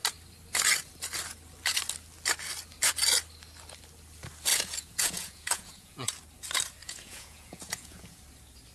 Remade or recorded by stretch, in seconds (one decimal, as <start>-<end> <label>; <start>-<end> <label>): 0.0-4.5 recorded; 4.5-6.1 remade; 6.1-6.8 recorded; 6.8-8.2 remade; 8.2-8.7 recorded